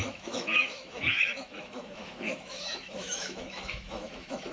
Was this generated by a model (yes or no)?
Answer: yes